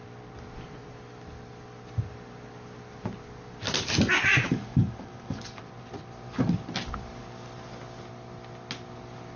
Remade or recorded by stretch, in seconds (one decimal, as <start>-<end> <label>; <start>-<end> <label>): 0.0-4.3 recorded; 4.3-5.6 remade; 5.6-9.4 recorded